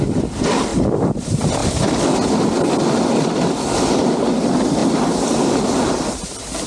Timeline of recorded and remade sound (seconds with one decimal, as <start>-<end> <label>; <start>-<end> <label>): 0.0-6.7 recorded